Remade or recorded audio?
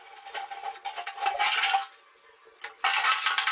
recorded